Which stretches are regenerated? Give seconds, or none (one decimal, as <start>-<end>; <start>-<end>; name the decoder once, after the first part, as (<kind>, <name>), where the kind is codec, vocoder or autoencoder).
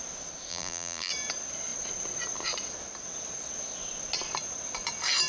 0.5-1.1 (vocoder, BigVGAN v2)